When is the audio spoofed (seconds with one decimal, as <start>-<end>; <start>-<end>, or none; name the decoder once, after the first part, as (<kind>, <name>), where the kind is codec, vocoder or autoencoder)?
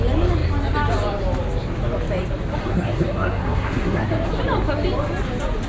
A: 2.6-4.3 (codec, SNAC)